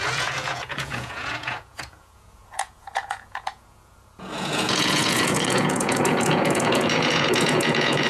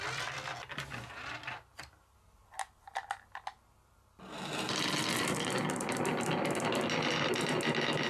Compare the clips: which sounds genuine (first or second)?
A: second